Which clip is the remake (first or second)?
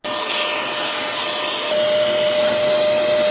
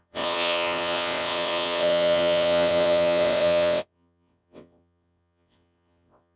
second